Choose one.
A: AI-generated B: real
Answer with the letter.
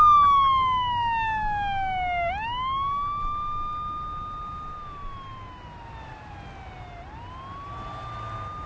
B